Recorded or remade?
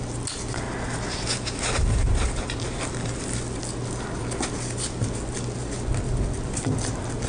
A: recorded